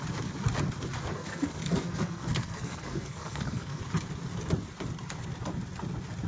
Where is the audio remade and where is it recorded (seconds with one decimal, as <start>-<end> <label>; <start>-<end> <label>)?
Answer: 0.0-1.1 recorded; 1.1-3.8 remade; 3.8-6.3 recorded